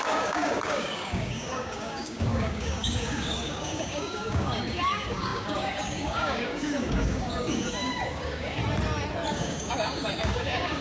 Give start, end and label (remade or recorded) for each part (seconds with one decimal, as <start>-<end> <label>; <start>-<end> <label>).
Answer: 0.0-8.6 remade; 8.6-9.3 recorded; 9.3-10.8 remade